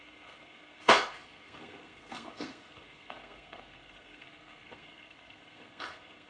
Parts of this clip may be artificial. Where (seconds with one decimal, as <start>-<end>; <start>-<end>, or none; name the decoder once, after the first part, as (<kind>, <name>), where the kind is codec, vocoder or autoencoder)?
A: 0.0-6.3 (codec, SNAC)